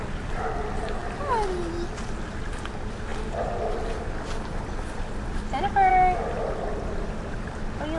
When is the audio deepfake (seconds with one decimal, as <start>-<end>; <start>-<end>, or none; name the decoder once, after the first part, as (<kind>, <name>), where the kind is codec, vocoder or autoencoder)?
none